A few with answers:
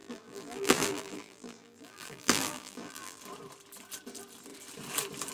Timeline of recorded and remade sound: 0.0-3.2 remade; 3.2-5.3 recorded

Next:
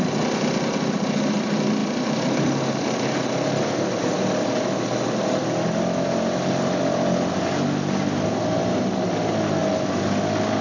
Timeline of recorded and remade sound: 0.0-10.6 recorded

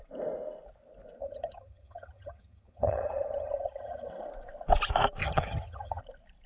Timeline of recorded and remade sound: 0.0-1.2 recorded; 1.2-4.1 remade; 4.1-5.2 recorded; 5.2-6.0 remade; 6.0-6.5 recorded

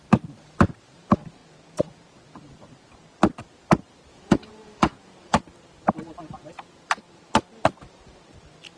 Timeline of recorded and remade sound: 0.0-4.1 recorded; 4.1-5.4 remade; 5.4-8.8 recorded

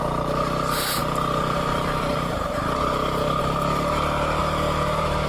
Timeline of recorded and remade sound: 0.0-1.0 recorded; 1.0-3.4 remade; 3.4-4.4 recorded; 4.4-5.3 remade

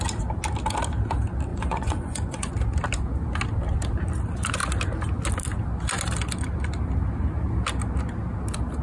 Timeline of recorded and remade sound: 0.0-1.5 recorded; 1.5-2.5 remade; 2.5-8.8 recorded

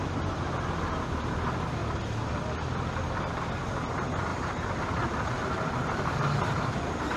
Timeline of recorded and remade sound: 0.0-4.3 recorded; 4.3-4.9 remade; 4.9-5.4 recorded; 5.4-6.8 remade; 6.8-7.2 recorded

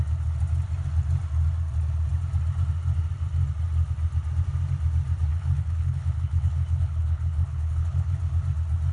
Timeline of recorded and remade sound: 0.0-5.3 recorded; 5.3-8.1 remade; 8.1-8.9 recorded